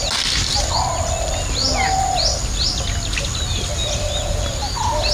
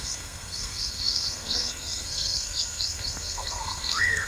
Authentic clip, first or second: first